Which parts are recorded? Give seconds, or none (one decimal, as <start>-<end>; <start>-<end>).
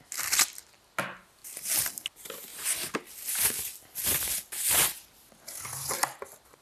0.0-1.4; 1.9-6.6